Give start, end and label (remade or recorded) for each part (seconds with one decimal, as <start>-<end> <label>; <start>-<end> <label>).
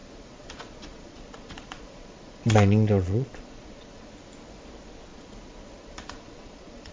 0.0-4.1 remade; 4.1-5.1 recorded; 5.1-6.9 remade